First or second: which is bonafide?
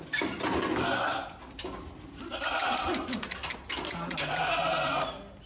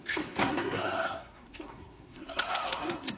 first